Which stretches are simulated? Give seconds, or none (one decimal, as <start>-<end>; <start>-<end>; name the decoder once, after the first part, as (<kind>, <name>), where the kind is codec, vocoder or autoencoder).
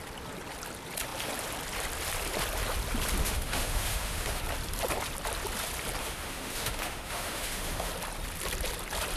3.2-4.4 (autoencoder, DAC-VAE); 6.0-7.9